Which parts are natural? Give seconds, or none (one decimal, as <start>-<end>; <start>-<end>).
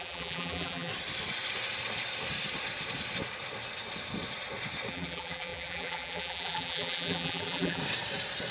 0.9-4.9; 7.8-8.5